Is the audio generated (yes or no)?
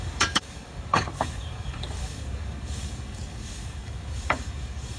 yes